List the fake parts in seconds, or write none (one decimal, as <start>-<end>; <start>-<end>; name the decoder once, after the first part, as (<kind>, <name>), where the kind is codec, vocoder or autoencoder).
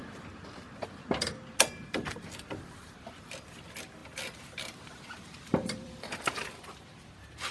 1.7-7.5 (vocoder, BigVGAN v2)